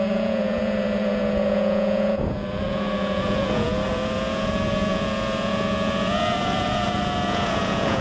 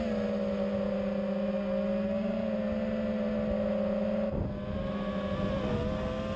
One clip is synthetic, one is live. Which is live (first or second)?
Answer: second